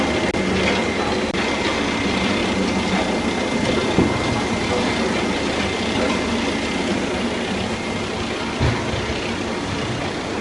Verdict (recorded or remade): recorded